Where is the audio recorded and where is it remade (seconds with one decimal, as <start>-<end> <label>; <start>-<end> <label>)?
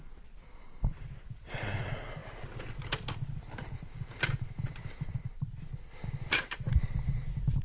0.0-7.6 recorded